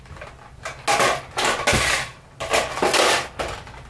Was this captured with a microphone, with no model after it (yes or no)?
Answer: yes